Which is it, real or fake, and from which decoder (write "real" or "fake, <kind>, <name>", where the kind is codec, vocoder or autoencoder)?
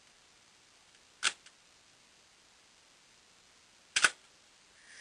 real